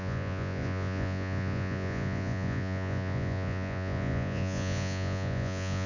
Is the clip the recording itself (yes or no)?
no